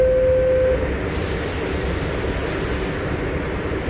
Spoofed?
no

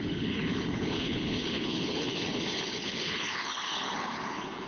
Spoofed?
yes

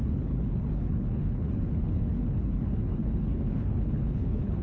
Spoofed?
yes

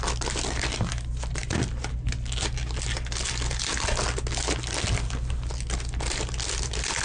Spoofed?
no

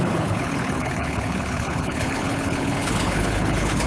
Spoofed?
yes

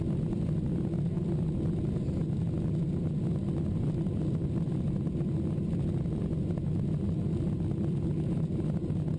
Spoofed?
no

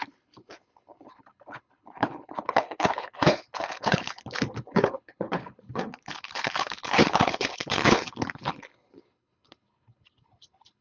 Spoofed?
yes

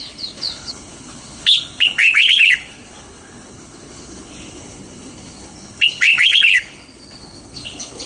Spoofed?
yes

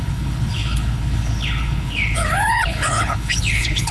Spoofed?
yes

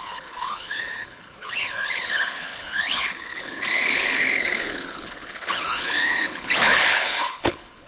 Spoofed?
yes